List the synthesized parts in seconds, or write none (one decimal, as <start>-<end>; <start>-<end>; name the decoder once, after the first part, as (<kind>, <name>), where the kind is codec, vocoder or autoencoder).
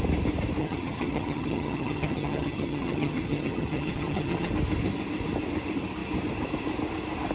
0.6-4.5 (vocoder, HiFi-GAN)